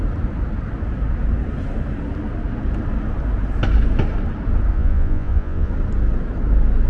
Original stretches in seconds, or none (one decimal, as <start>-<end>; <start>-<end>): 0.0-4.7; 5.7-6.9